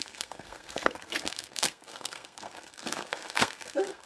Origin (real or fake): fake